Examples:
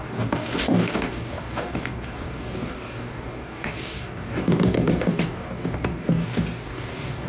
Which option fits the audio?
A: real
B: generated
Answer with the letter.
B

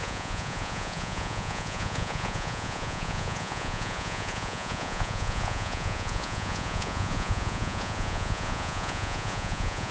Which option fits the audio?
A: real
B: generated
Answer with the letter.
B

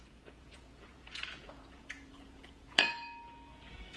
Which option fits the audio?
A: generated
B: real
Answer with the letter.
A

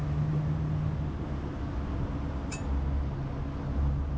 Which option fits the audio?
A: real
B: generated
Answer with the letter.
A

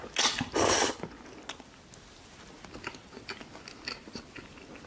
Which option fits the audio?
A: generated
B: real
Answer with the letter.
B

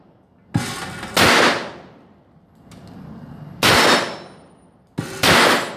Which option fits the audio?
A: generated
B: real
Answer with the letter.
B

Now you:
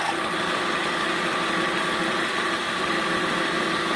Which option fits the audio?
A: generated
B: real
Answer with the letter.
B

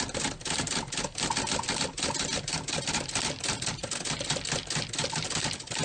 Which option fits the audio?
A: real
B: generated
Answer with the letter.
A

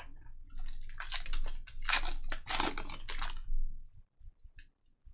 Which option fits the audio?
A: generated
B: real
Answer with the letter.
B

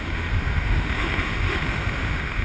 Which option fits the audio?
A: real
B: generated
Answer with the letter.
B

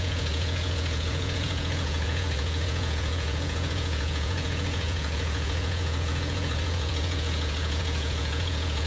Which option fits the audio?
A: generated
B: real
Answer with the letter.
A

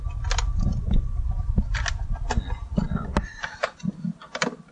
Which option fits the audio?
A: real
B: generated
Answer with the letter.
A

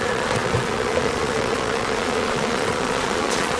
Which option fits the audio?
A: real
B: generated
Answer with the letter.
B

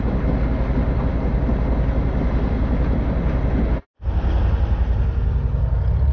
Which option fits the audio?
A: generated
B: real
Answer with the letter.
B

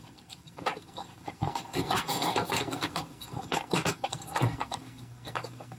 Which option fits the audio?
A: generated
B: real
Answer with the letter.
A